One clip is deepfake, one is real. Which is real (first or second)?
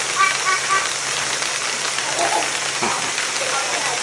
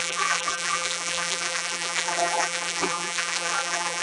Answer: first